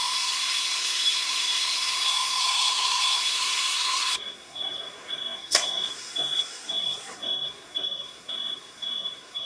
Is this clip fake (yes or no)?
yes